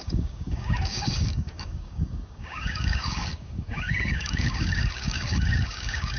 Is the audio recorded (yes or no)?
no